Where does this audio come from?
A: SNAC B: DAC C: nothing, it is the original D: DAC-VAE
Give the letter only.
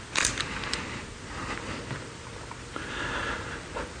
C